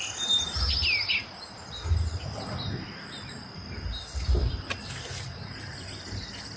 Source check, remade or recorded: recorded